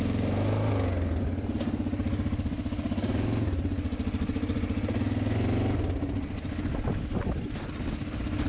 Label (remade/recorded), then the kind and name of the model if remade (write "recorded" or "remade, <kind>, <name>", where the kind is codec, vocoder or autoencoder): recorded